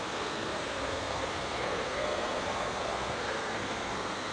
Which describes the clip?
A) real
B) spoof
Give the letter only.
B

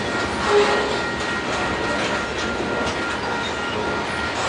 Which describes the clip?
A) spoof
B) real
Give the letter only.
B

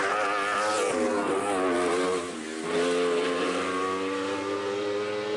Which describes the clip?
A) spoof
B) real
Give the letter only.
B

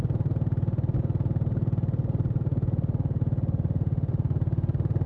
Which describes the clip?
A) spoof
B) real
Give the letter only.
B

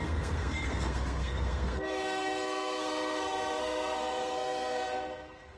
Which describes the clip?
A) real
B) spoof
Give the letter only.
B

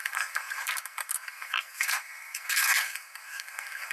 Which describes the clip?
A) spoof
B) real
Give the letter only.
A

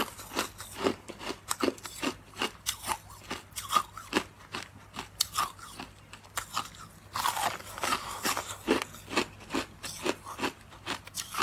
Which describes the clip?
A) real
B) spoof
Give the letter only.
A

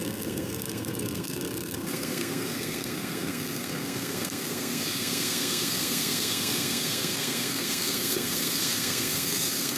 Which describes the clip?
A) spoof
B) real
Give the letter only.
A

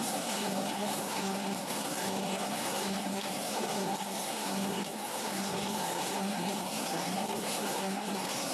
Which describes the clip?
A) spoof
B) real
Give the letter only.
A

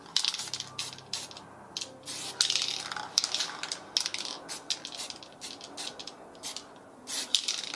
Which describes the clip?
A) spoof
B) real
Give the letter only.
B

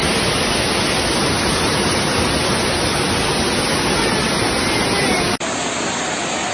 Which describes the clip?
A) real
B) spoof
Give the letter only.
A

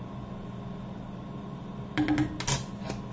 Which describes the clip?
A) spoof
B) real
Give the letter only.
B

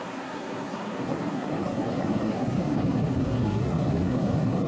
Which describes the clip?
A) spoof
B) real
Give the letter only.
A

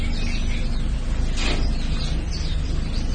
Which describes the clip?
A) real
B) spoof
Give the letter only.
A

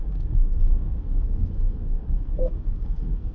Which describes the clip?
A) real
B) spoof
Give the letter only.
B